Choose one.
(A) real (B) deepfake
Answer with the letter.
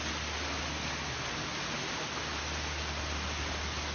A